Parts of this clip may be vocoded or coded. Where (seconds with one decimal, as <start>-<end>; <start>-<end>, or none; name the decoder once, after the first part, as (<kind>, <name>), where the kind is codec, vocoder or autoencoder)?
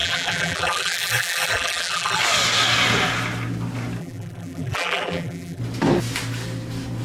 0.0-2.2 (vocoder, BigVGAN v2); 4.0-5.6